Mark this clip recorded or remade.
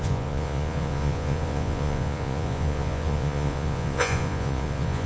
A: remade